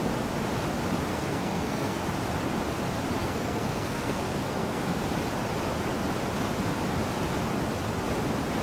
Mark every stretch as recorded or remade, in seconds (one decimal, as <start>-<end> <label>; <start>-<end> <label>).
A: 0.0-1.1 recorded; 1.1-2.0 remade; 2.0-3.2 recorded; 3.2-5.0 remade; 5.0-8.6 recorded